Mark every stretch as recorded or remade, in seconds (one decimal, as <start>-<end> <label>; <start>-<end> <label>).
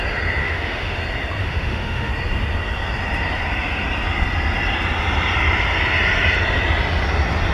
0.0-0.4 recorded; 0.4-1.0 remade; 1.0-1.4 recorded; 1.4-2.1 remade; 2.1-7.5 recorded